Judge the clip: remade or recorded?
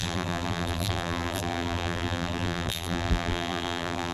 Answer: remade